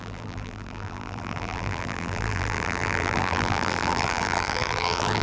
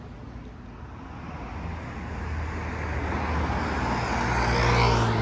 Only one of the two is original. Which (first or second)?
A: second